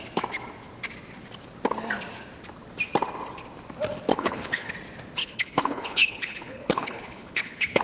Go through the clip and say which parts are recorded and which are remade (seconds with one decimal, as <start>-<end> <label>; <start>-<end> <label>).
0.0-4.1 recorded; 4.1-4.7 remade; 4.7-5.2 recorded; 5.2-7.8 remade